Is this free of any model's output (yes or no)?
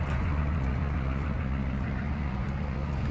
no